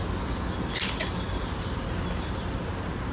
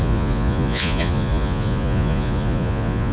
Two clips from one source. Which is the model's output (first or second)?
second